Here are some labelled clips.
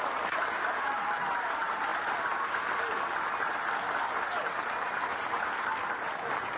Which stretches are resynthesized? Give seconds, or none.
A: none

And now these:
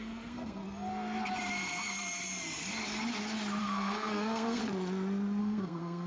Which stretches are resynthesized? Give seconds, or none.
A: 0.0-0.6 (codec, SNAC); 3.6-4.6; 5.4-6.1